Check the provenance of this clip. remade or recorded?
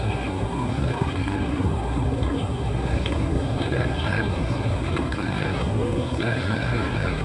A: remade